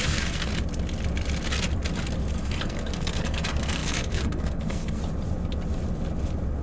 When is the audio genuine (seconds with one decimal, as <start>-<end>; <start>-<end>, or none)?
0.5-2.3; 5.0-6.6